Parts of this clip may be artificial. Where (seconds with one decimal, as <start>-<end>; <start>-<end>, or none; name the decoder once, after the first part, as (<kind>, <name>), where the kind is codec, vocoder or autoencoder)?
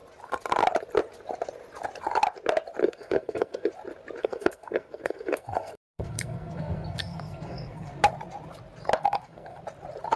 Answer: 2.8-3.7 (codec, SNAC); 4.2-7.9; 9.0-9.6